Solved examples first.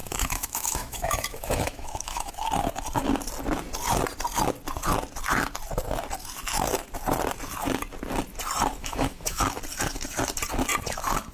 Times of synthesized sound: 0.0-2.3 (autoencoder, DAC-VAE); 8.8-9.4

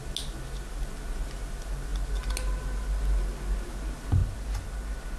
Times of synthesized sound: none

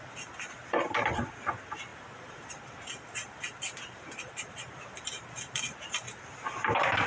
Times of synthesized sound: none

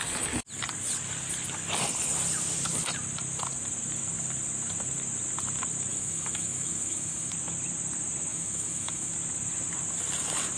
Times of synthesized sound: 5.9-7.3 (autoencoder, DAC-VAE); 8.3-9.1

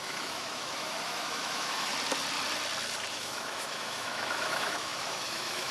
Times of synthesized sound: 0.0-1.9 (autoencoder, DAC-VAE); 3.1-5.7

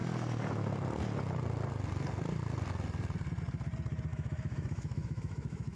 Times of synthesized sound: 4.1-5.8 (autoencoder, DAC-VAE)